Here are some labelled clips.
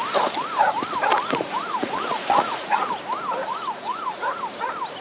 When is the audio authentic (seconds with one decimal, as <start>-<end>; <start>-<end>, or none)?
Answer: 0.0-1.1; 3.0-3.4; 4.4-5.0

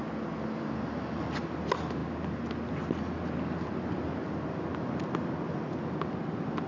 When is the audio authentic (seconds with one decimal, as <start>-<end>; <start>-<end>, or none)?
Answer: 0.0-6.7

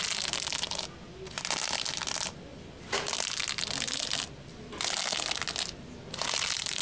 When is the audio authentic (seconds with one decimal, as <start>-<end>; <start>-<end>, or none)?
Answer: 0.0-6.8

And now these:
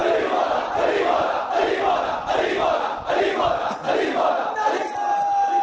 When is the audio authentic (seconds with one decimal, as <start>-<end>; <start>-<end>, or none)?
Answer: 1.6-5.6

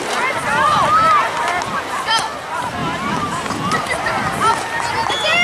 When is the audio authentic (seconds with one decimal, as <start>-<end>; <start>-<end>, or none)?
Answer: 0.0-5.4

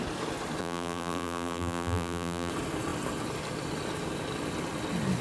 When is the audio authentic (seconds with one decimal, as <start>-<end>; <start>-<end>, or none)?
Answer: 0.0-0.6; 2.5-5.2